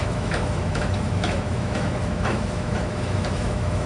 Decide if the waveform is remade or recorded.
remade